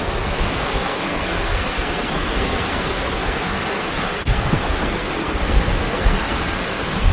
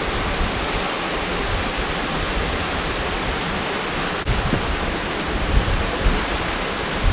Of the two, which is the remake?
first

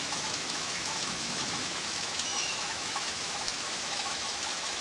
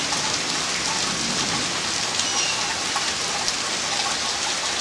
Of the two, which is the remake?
first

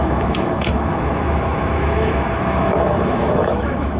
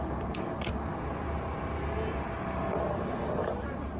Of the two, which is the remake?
first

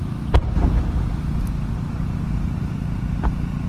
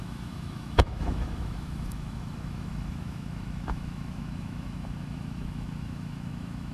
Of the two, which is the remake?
second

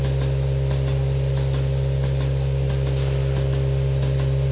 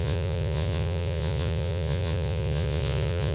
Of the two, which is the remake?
second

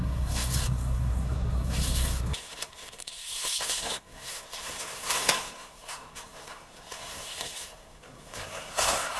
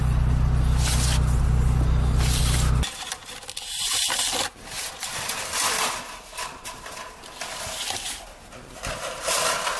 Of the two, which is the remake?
first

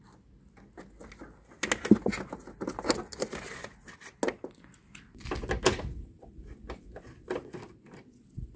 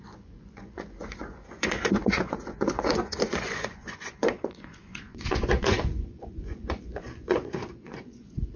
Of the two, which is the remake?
second